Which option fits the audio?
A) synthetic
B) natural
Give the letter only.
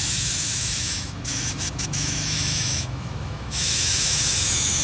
A